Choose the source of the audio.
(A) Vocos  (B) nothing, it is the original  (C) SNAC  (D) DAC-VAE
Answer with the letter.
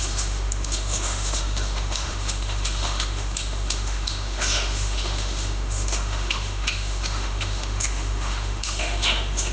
D